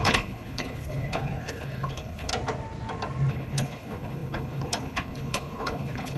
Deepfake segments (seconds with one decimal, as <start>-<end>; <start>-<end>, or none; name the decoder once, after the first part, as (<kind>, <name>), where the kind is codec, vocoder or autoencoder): 0.0-2.3 (codec, HILCodec); 3.3-6.2